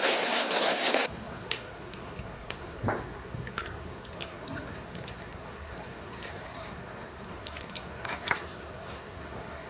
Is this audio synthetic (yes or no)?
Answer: yes